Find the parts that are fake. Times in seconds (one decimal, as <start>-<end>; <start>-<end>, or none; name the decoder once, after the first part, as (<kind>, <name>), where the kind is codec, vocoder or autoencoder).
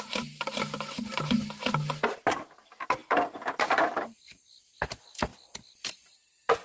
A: none